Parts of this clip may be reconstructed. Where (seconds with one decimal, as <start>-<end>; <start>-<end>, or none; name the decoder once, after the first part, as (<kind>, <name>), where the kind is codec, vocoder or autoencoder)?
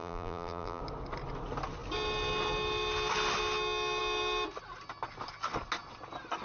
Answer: 0.0-0.8 (vocoder, BigVGAN v2)